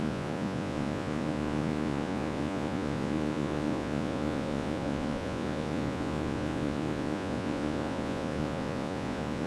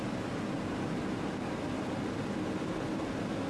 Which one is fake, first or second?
first